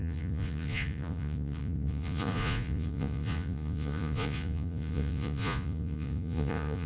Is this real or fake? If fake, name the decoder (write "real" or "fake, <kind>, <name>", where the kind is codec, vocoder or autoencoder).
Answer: fake, vocoder, Vocos